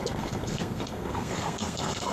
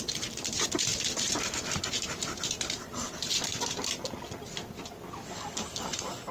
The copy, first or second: first